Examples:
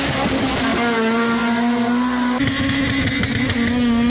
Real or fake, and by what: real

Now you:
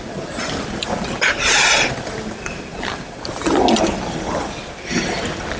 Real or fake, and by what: real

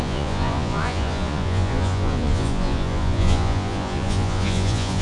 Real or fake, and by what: fake, vocoder, Vocos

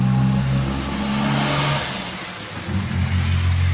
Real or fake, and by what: real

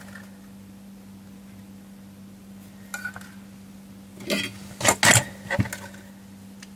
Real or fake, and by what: real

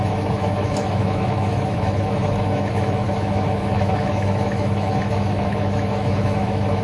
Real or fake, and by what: fake, autoencoder, DAC-VAE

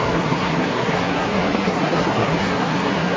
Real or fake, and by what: fake, codec, SNAC